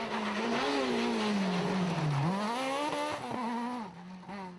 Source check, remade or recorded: recorded